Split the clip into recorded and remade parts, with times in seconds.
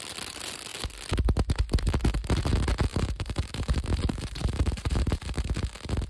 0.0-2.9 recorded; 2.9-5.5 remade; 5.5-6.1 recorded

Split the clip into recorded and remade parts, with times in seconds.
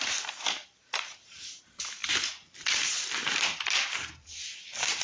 0.0-5.0 remade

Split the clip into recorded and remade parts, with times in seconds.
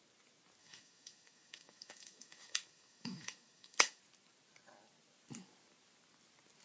0.0-0.6 recorded; 0.6-4.0 remade; 4.0-6.6 recorded